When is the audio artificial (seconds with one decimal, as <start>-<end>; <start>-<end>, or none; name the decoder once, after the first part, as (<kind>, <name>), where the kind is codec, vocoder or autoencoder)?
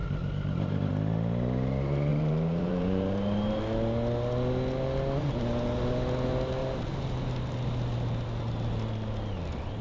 2.1-3.6 (vocoder, BigVGAN v2); 6.6-7.1